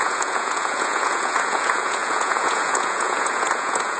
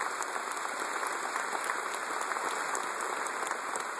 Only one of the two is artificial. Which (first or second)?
first